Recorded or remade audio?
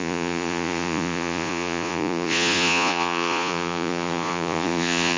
remade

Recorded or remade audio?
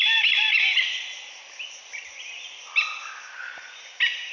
recorded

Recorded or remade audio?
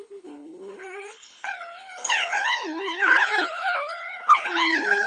remade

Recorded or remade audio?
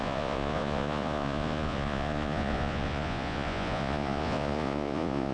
remade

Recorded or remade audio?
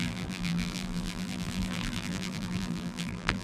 remade